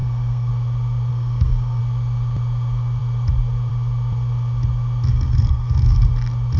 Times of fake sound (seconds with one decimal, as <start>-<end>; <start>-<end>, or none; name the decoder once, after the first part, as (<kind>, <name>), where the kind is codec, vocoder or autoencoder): 0.0-0.5 (codec, SNAC); 1.1-1.8; 5.1-6.1